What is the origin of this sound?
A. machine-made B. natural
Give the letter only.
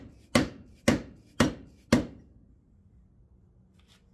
B